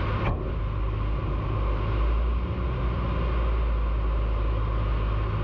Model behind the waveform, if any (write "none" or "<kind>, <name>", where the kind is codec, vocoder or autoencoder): none